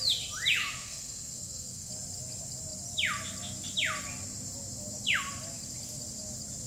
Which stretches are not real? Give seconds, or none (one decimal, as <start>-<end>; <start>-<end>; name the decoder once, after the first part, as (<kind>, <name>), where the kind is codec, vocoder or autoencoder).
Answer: 0.6-1.9 (codec, SNAC)